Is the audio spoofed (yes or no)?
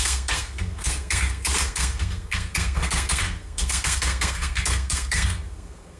yes